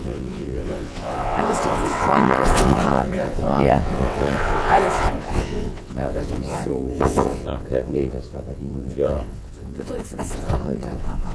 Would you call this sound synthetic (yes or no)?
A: yes